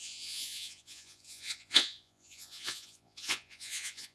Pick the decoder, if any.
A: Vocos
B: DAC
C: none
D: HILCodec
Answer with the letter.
A